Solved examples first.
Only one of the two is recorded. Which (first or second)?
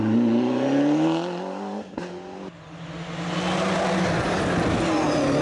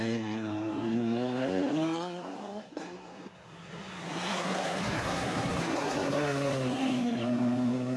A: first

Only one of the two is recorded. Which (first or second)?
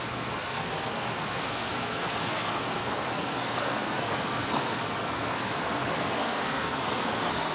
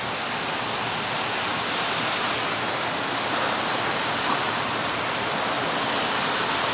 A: second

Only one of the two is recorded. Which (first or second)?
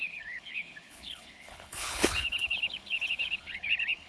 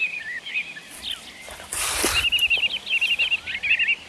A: second